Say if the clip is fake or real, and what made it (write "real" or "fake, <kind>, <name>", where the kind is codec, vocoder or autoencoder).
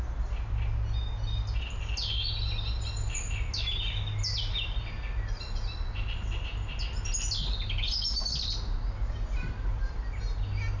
real